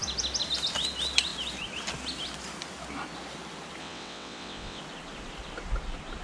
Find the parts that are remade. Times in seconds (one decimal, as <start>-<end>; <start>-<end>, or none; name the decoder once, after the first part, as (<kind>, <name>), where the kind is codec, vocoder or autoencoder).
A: 3.8-4.8 (vocoder, WaveNeXt)